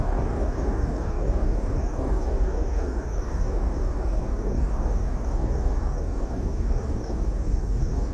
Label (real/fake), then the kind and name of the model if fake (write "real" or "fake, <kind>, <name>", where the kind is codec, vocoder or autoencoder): fake, codec, DAC